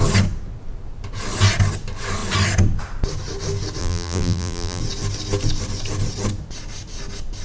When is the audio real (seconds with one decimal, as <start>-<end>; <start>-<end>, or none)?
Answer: 0.0-3.8; 4.8-7.4